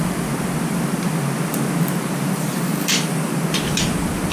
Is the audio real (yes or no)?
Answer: yes